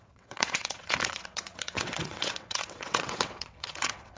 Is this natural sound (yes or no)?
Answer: no